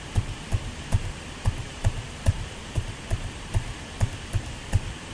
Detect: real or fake fake